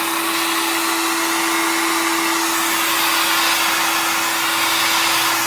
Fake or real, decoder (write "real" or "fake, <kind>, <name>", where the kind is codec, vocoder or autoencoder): real